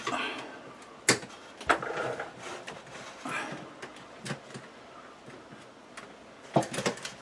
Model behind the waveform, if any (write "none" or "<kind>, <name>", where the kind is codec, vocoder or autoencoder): none